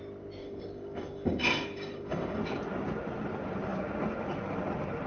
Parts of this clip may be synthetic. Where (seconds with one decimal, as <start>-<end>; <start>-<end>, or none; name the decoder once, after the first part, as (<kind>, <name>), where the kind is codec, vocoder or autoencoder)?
0.4-2.4 (codec, DAC)